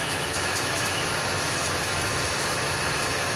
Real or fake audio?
fake